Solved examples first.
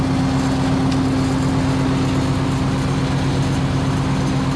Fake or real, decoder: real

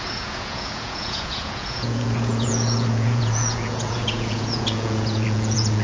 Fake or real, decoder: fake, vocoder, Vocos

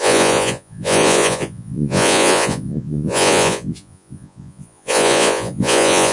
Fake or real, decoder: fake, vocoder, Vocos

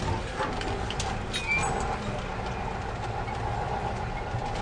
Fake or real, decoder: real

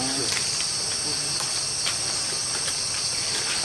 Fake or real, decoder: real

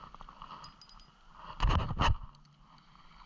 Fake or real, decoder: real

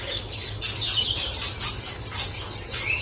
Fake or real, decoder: real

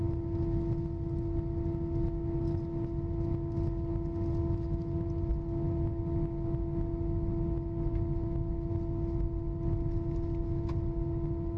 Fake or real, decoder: real